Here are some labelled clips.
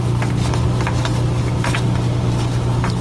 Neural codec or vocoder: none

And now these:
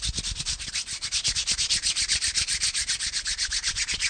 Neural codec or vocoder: none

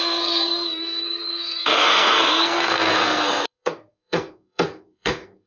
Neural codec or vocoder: codec, SNAC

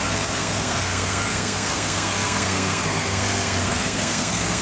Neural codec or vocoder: codec, SNAC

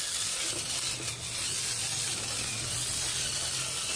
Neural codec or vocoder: none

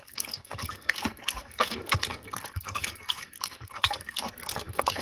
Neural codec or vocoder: codec, SNAC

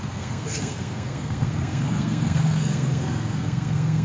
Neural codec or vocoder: codec, SNAC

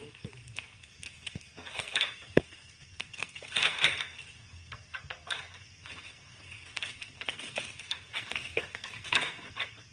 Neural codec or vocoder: codec, SNAC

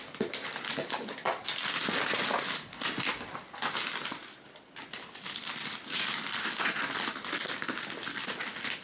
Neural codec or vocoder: none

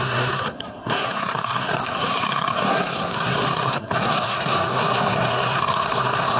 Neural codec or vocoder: codec, SNAC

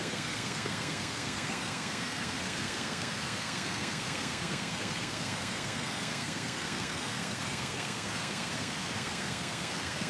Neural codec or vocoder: codec, SNAC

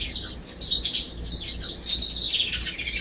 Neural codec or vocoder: none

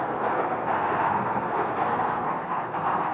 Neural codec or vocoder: codec, SNAC